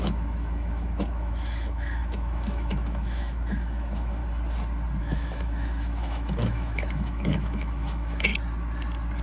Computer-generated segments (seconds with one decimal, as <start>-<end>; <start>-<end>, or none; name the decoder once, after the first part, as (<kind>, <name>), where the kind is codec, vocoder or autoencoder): 0.0-4.2 (autoencoder, DAC-VAE); 5.0-8.3